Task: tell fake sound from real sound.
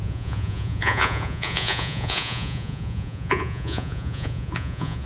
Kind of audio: fake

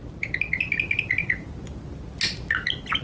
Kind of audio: real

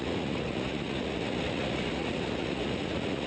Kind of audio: fake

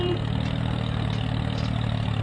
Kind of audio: real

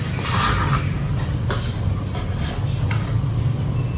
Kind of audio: real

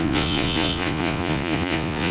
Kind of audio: fake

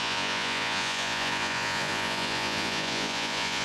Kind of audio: fake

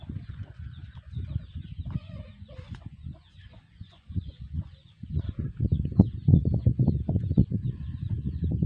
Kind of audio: fake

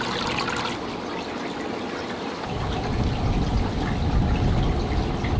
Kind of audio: real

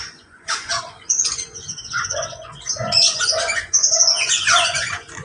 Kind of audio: fake